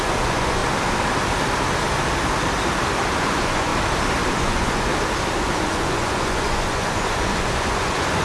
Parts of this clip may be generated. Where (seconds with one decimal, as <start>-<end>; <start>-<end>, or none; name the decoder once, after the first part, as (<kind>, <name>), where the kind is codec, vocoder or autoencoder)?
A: 0.0-0.6 (vocoder, Vocos); 3.2-3.7; 4.3-4.9; 5.4-8.2

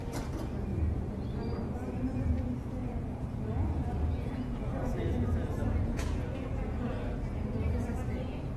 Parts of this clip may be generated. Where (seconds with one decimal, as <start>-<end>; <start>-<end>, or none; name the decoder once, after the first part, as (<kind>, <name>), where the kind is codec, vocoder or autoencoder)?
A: 1.8-2.3 (vocoder, Vocos); 2.8-7.1

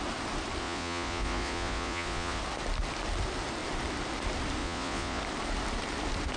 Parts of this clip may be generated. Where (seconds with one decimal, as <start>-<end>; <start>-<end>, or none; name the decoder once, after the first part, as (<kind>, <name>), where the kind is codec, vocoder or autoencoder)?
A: 0.6-2.4 (vocoder, Vocos); 4.6-5.2

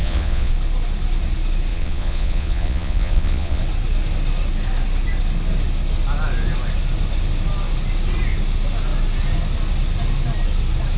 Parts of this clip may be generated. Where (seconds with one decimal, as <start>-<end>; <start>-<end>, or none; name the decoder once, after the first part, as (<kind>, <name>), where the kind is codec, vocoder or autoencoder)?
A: 0.0-0.5 (vocoder, Vocos); 1.7-3.6